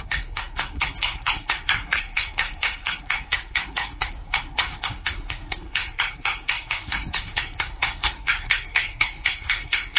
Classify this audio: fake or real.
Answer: fake